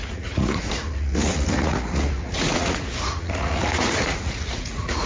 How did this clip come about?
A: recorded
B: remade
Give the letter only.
B